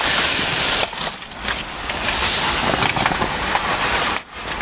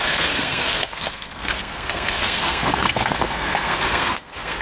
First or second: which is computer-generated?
second